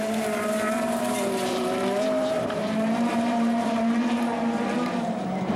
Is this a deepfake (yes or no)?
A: yes